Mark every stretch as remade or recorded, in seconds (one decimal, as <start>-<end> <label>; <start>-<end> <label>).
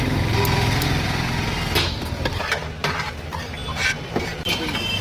0.0-2.3 recorded; 2.3-4.5 remade; 4.5-5.0 recorded